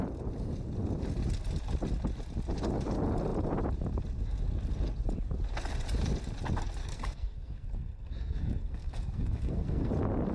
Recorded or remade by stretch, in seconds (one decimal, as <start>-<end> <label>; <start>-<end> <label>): 0.0-6.8 recorded; 6.8-9.9 remade; 9.9-10.3 recorded